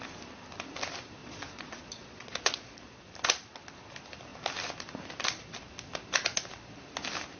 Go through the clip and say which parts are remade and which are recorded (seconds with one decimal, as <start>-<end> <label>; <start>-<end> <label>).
0.0-1.2 recorded; 1.2-3.0 remade; 3.0-7.4 recorded